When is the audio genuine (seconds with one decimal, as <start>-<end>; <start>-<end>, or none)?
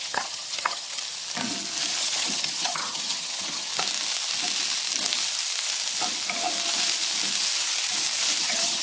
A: 1.0-2.0; 3.7-8.4